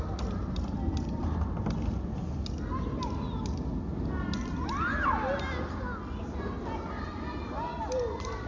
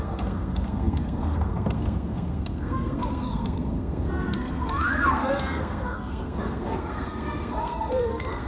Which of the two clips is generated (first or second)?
second